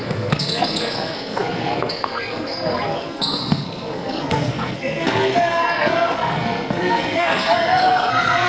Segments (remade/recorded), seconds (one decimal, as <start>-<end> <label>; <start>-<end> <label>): 0.0-8.5 remade